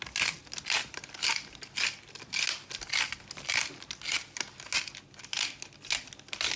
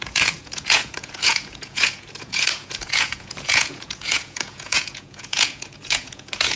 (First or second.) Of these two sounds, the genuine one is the first